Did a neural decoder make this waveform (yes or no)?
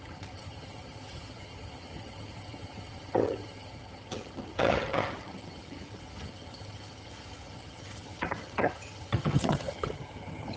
yes